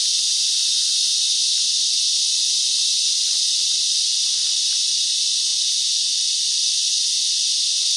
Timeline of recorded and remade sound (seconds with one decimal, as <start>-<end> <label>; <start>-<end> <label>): 0.0-8.0 recorded